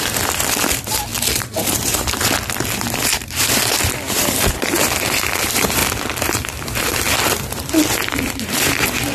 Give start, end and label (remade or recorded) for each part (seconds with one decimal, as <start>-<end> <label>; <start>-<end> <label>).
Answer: 0.0-1.1 remade; 1.1-4.4 recorded; 4.4-9.1 remade